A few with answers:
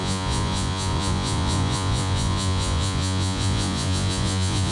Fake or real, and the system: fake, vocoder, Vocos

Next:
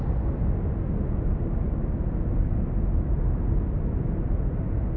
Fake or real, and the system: real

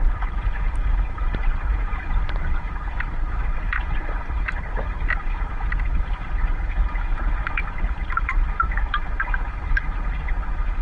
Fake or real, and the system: fake, vocoder, BigVGAN v2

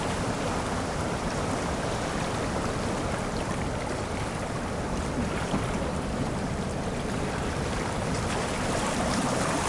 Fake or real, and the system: fake, vocoder, BigVGAN v2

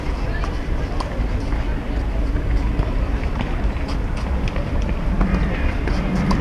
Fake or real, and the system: real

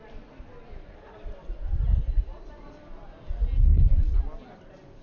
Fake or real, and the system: real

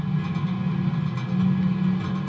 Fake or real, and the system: real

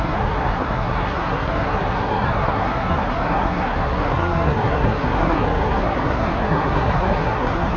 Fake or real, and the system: fake, codec, SNAC